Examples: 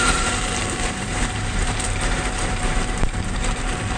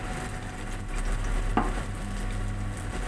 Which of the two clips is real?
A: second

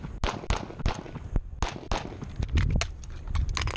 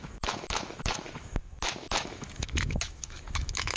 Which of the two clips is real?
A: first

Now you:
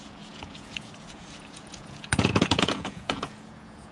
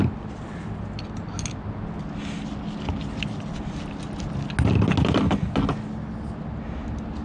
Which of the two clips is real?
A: second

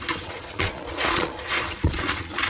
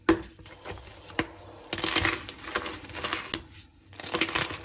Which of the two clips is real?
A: second